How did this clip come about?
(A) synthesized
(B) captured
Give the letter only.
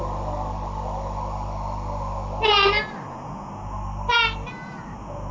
B